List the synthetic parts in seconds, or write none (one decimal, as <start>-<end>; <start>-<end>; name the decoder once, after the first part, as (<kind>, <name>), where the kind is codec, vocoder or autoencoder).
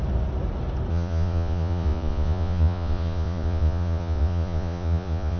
0.9-5.4 (vocoder, Vocos)